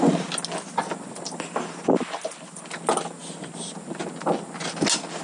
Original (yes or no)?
yes